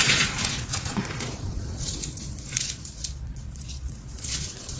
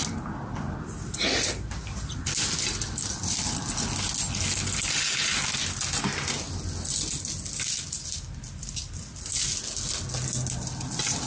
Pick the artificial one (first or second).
first